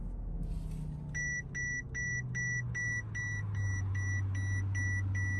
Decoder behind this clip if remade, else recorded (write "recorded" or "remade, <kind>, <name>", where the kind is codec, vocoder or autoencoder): recorded